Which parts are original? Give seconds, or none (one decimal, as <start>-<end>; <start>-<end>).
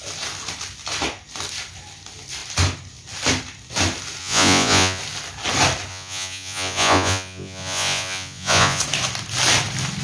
0.0-4.2; 5.0-5.9; 8.8-10.0